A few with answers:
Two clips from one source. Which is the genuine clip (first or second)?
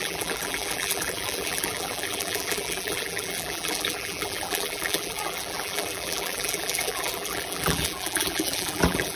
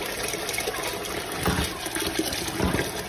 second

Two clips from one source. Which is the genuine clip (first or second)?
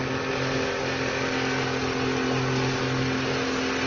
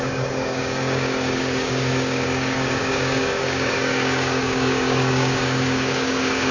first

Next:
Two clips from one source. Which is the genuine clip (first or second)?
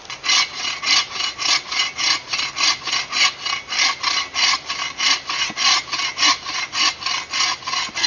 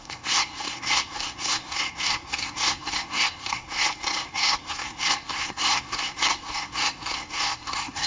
first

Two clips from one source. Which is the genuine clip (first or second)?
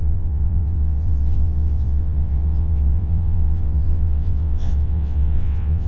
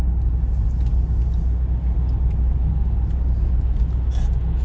second